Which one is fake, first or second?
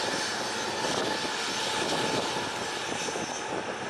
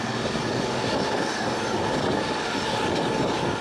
second